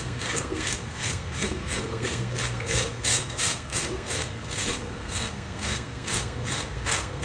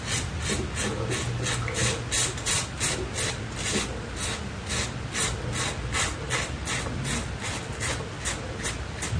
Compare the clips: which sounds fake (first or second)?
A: first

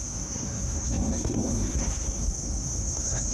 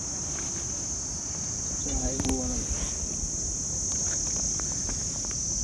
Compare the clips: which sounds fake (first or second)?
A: first